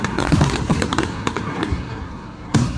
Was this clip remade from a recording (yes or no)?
yes